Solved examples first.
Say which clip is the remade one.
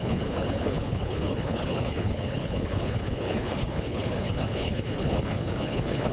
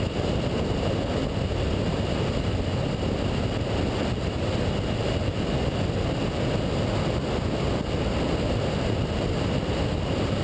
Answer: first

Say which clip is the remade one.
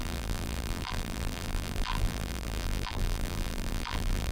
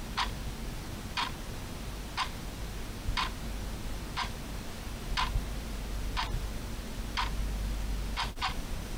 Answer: first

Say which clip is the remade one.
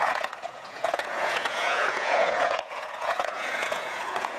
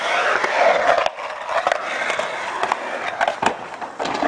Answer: first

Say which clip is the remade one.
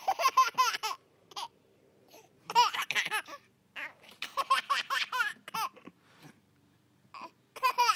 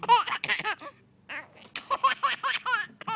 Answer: first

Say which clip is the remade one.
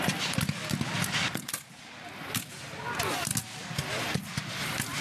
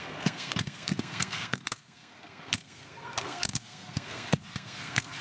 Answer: second